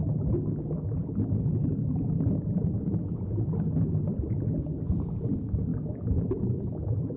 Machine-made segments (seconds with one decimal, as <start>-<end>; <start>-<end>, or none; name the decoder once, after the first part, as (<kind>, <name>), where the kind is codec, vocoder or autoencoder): none